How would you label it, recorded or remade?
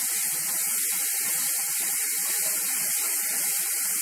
recorded